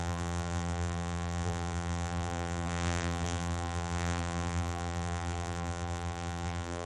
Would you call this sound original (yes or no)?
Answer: no